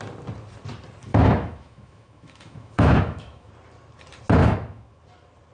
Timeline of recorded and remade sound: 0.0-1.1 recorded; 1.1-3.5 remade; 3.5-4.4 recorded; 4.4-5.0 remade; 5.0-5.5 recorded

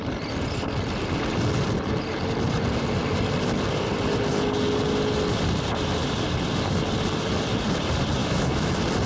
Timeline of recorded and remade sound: 0.0-8.2 recorded; 8.2-8.7 remade; 8.7-9.1 recorded

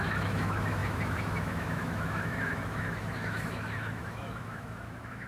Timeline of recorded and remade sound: 0.0-5.3 remade

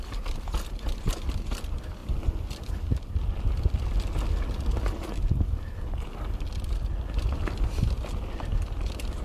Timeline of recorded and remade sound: 0.0-9.2 recorded

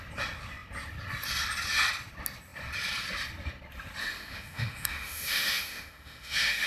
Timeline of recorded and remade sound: 0.0-4.0 recorded; 4.0-6.7 remade